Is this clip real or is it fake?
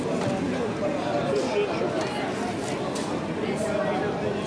real